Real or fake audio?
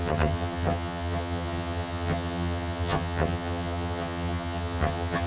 fake